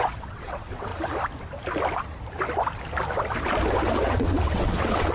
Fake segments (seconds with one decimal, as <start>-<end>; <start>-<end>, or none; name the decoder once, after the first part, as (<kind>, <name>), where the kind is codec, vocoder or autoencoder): 0.0-0.9 (vocoder, WaveNeXt); 4.0-5.1